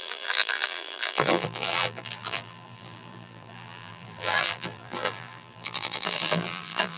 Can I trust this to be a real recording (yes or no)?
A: no